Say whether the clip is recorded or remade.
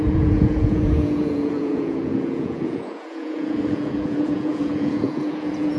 remade